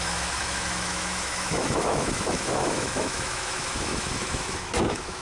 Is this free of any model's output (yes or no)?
no